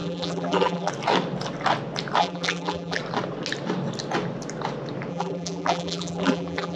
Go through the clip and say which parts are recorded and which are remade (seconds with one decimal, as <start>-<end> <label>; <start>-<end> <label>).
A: 0.0-0.9 remade; 0.9-2.2 recorded; 2.2-3.0 remade; 3.0-5.1 recorded; 5.1-6.8 remade